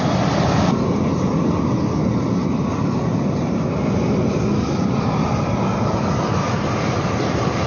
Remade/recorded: recorded